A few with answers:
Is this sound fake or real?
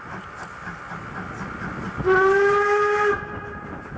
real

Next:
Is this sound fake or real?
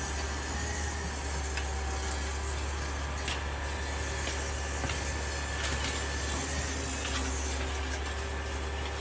real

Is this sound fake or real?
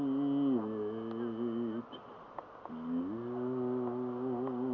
real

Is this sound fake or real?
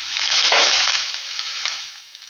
fake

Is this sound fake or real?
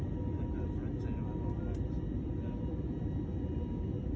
real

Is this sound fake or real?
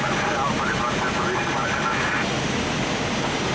real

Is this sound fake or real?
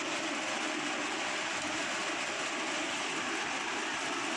real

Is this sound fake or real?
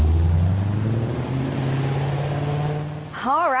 real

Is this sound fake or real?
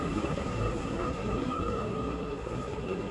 fake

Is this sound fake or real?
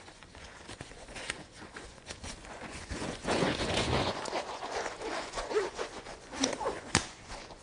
fake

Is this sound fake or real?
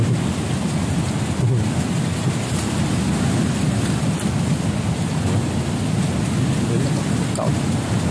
real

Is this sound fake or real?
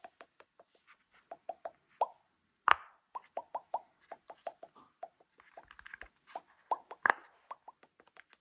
real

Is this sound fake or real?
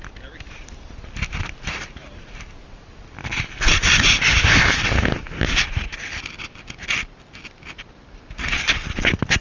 real